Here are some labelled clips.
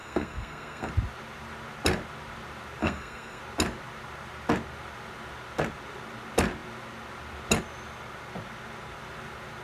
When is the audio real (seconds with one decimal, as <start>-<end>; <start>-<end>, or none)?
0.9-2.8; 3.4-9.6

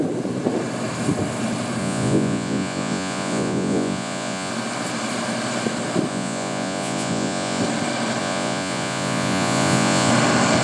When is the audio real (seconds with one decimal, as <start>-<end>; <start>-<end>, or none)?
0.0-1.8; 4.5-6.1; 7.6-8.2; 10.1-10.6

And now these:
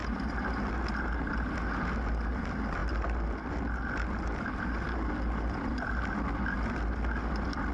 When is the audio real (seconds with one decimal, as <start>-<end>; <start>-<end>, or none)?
0.0-7.7

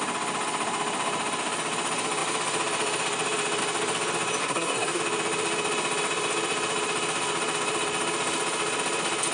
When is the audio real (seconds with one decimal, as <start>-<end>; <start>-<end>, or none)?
0.0-4.4; 5.0-9.3

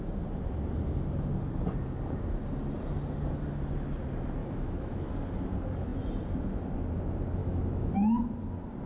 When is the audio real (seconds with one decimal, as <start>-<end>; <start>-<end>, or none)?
0.0-4.4; 5.1-7.4; 8.2-8.9

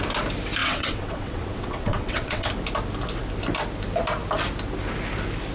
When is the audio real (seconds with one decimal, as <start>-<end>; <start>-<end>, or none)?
0.0-0.6; 2.5-5.5

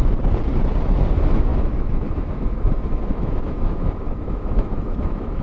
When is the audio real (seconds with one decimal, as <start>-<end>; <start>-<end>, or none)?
0.0-1.1